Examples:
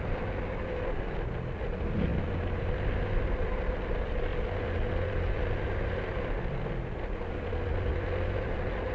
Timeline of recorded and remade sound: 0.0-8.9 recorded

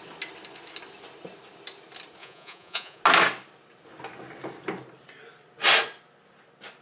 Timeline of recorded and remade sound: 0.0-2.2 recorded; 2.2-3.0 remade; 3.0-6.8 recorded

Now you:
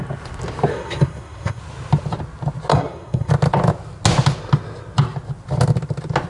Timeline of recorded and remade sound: 0.0-0.7 recorded; 0.7-1.6 remade; 1.6-2.7 recorded; 2.7-3.3 remade; 3.3-6.3 recorded

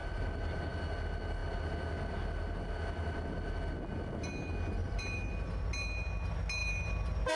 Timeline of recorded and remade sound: 0.0-0.6 remade; 0.6-4.8 recorded; 4.8-5.7 remade; 5.7-7.3 recorded

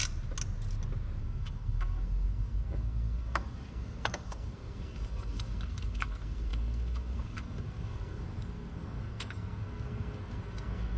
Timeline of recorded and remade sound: 0.0-1.2 recorded; 1.2-11.0 remade

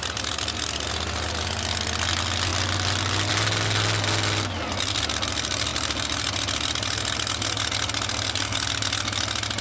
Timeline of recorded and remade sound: 0.0-9.6 recorded

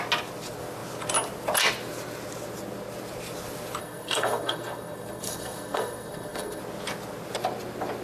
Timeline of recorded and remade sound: 0.0-3.8 recorded; 3.8-6.6 remade; 6.6-8.0 recorded